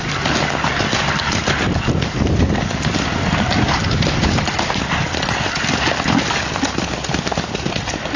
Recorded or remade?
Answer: recorded